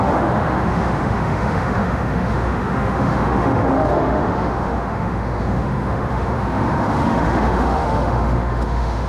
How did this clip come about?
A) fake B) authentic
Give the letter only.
A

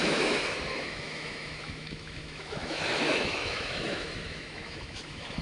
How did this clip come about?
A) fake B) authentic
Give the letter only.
A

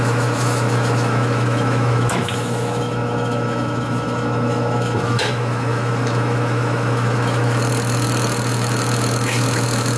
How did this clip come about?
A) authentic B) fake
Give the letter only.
B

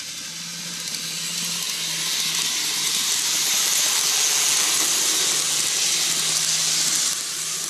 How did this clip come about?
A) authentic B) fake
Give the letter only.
A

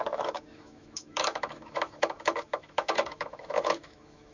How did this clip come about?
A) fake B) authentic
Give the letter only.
A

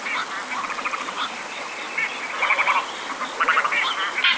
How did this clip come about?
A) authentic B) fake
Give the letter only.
A